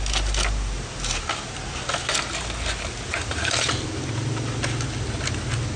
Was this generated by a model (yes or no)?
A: no